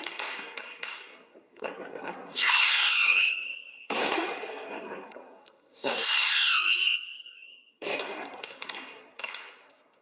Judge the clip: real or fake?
fake